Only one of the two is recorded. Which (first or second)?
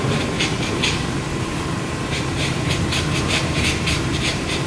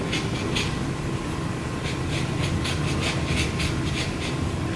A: second